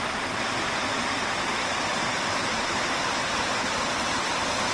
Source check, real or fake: fake